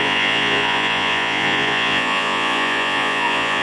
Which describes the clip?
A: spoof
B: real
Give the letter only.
A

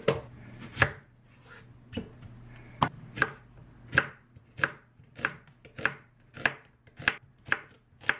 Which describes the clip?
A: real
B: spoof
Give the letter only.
A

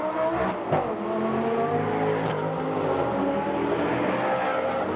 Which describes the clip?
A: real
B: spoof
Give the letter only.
A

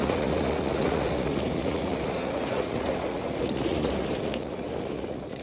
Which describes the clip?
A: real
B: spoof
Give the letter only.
B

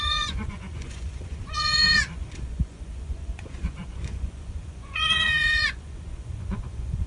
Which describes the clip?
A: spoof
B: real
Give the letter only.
A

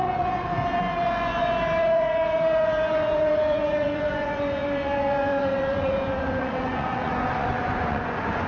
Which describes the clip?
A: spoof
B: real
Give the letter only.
A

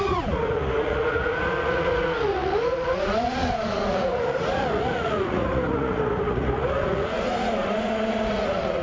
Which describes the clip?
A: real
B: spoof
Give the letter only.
B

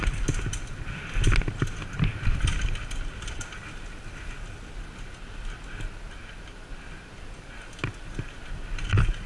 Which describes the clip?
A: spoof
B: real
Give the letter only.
B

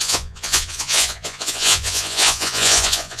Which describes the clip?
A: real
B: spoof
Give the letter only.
B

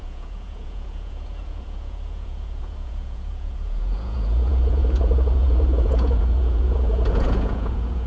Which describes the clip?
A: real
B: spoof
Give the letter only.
B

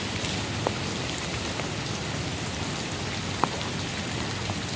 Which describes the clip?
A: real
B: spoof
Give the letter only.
A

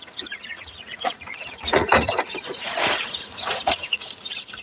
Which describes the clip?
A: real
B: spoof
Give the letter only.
B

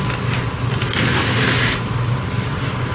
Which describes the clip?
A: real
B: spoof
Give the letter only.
A